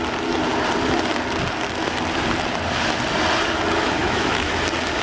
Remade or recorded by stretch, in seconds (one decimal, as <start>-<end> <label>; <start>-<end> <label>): 0.0-4.0 recorded; 4.0-4.5 remade; 4.5-5.0 recorded